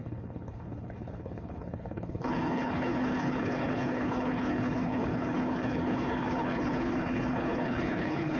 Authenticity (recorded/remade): remade